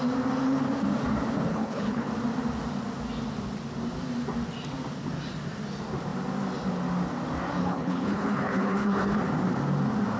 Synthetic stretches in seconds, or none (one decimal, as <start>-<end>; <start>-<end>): 1.5-2.1; 7.6-9.2